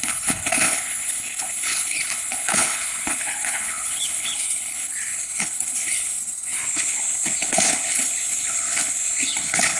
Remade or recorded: remade